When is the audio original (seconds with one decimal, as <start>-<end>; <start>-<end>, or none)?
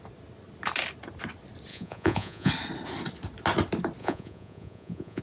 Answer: 0.0-1.7; 2.5-4.0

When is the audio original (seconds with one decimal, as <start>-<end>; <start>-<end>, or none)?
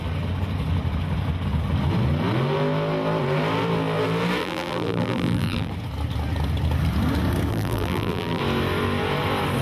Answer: 0.0-4.4; 5.7-7.5; 8.4-9.6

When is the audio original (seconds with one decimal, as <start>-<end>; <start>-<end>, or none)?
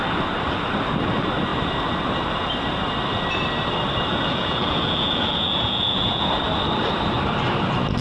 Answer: 0.0-4.1; 6.3-8.0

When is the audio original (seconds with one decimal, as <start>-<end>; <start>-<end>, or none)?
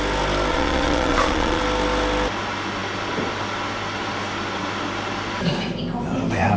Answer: 0.0-0.5; 1.6-6.6